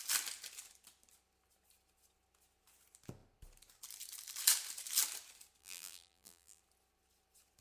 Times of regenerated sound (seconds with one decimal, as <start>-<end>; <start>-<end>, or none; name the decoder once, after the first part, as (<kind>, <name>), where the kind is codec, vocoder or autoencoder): 5.6-6.6 (vocoder, BigVGAN v2)